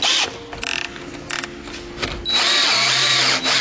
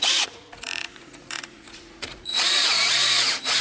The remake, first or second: second